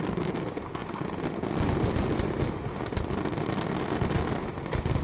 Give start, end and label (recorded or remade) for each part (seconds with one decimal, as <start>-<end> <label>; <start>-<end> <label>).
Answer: 0.0-5.0 recorded